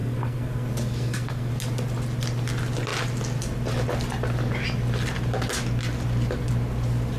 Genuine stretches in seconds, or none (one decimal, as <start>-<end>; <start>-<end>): 1.5-7.2